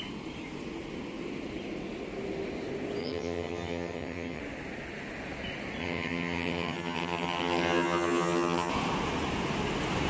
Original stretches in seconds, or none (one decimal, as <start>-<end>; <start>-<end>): 0.0-3.0; 4.4-5.8; 8.7-10.1